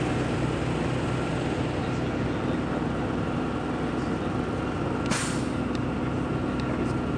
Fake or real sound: real